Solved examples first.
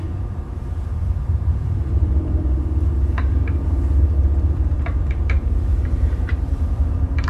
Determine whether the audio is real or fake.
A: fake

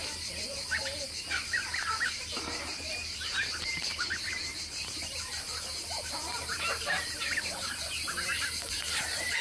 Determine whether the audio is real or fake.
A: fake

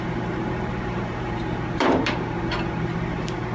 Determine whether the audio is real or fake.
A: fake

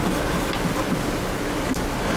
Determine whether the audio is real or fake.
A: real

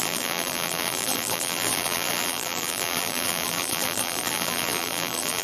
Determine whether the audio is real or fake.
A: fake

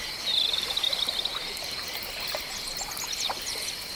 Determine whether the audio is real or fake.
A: real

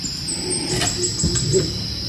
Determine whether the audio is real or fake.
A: real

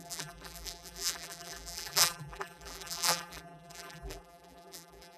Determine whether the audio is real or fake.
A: fake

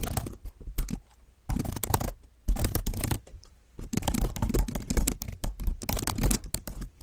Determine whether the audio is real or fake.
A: fake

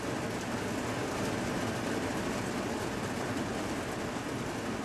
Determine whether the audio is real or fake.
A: real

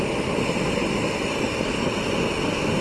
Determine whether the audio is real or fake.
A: real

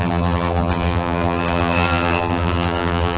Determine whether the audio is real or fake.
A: fake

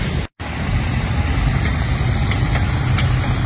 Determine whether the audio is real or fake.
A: real